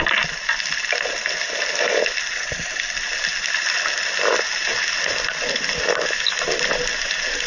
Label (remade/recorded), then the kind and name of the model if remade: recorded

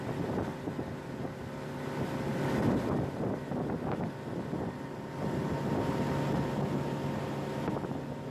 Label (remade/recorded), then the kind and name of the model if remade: recorded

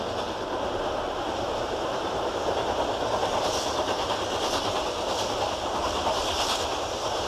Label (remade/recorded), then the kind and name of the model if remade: recorded